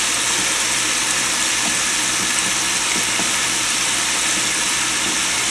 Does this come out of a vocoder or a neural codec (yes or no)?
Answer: no